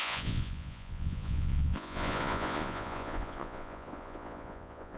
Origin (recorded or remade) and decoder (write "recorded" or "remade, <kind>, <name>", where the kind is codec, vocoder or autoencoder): remade, vocoder, Vocos